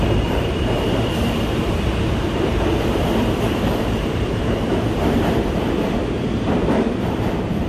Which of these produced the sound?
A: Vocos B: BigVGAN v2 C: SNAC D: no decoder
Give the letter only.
B